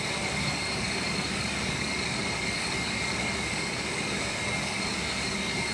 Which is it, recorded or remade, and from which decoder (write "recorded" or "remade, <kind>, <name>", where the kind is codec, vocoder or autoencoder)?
remade, codec, DAC